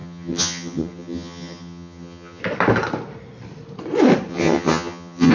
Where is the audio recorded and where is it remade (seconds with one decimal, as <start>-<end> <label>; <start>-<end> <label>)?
0.0-2.4 remade; 2.4-4.3 recorded; 4.3-5.3 remade